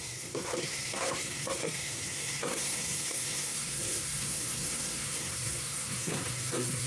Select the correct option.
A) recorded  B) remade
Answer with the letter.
B